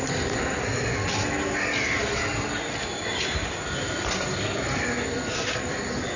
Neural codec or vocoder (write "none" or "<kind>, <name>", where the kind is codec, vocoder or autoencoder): none